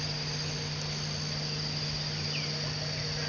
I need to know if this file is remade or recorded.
recorded